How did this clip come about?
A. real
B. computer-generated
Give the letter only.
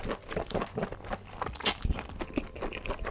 A